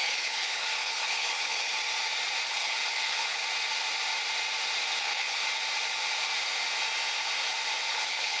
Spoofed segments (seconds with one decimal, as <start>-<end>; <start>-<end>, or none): 0.0-1.7; 2.5-3.4; 5.0-5.4; 7.9-8.4